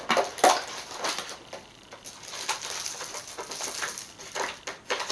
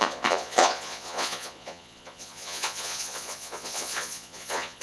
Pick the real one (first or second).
first